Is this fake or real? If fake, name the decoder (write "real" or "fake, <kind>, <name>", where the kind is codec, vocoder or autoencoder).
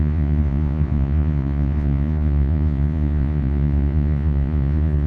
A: fake, vocoder, Vocos